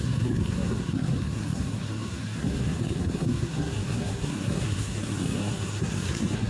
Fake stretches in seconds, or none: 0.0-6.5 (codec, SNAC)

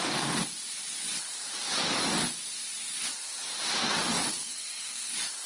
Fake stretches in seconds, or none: 4.4-5.1 (codec, SNAC)

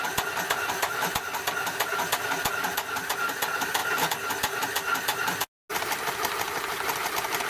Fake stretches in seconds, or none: none

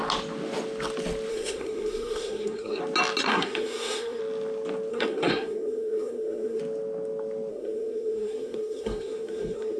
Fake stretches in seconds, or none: 1.3-2.8 (codec, SNAC); 3.2-4.2; 4.9-6.6; 7.5-9.8

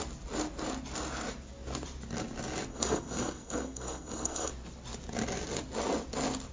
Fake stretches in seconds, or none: 2.7-4.5 (codec, SNAC)

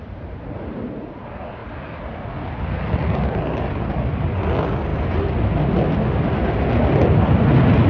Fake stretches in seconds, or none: none

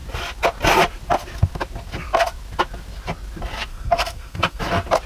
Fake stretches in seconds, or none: 3.7-4.6 (codec, SNAC)